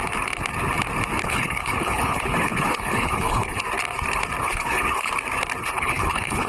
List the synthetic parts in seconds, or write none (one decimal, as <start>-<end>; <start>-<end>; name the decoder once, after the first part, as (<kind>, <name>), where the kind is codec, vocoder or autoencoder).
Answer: 1.2-3.6 (codec, HILCodec); 4.4-5.1; 5.6-6.5